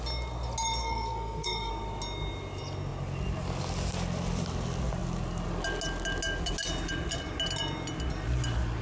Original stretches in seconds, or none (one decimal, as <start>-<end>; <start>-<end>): 0.0-0.8; 1.7-8.8